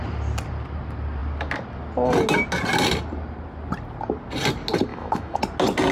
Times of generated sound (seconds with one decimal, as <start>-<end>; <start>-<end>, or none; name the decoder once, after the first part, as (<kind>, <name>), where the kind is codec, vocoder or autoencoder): 4.9-5.4 (autoencoder, DAC-VAE)